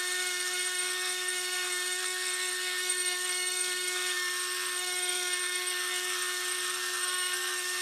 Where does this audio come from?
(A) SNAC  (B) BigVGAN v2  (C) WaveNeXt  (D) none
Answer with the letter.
A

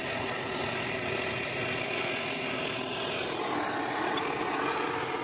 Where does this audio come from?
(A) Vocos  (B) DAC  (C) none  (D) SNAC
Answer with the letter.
C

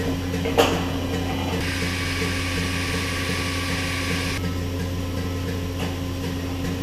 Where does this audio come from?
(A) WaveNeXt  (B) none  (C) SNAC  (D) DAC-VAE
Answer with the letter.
B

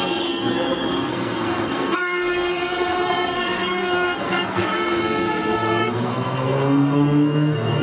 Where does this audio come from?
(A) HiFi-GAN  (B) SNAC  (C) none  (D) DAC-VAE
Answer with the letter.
B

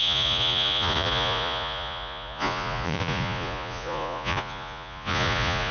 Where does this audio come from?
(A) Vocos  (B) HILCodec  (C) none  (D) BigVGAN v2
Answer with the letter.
A